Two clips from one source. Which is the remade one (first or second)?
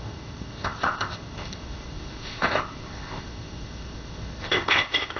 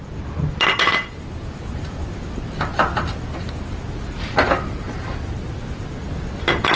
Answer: first